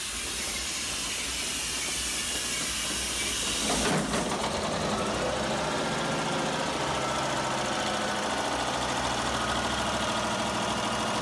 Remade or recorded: recorded